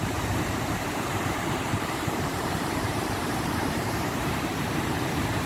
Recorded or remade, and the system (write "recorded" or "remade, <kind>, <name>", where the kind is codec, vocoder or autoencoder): remade, vocoder, BigVGAN v2